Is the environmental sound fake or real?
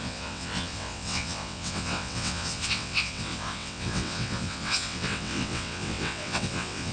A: fake